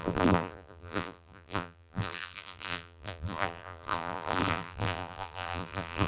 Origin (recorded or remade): remade